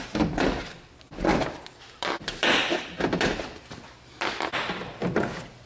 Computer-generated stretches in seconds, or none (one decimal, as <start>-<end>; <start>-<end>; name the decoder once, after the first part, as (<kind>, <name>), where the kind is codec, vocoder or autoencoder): none